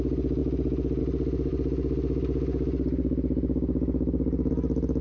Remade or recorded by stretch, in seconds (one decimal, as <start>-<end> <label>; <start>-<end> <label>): 0.0-5.0 recorded

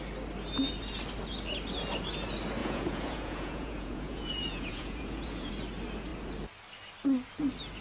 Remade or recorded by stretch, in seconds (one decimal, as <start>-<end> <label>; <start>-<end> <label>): 0.0-2.6 recorded; 2.6-5.5 remade; 5.5-7.8 recorded

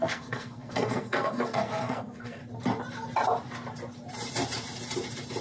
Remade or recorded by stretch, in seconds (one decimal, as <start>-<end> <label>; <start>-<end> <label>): 0.0-2.4 remade; 2.4-5.4 recorded

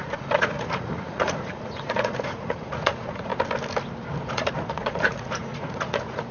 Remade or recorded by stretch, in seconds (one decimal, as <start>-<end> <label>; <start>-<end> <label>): 0.0-3.3 remade; 3.3-4.3 recorded; 4.3-6.3 remade

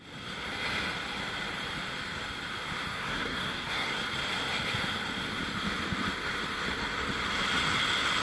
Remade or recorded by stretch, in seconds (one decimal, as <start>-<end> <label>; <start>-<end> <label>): 0.0-2.9 recorded; 2.9-4.0 remade; 4.0-8.2 recorded